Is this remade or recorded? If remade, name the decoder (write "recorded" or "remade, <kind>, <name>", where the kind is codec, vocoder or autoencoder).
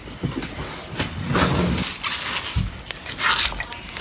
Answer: recorded